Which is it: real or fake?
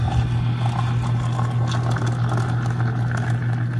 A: real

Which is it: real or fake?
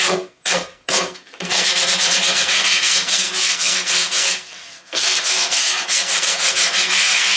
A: fake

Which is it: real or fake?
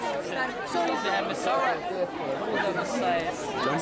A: real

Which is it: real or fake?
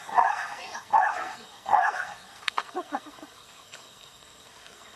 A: fake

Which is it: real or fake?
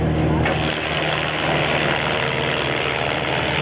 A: real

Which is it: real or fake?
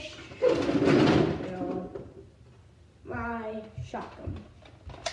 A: real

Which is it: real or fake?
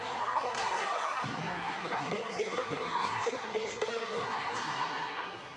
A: fake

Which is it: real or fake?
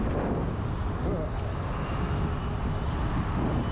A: real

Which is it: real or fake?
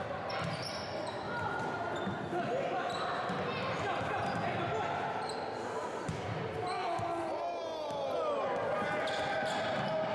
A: real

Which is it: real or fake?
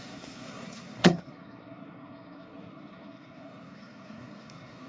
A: fake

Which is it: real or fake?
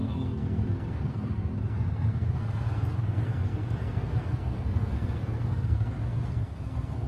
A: fake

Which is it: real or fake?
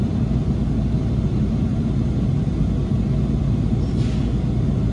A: real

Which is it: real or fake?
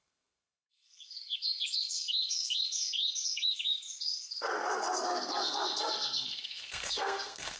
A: fake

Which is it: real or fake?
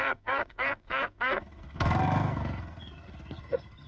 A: fake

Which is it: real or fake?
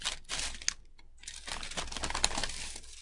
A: real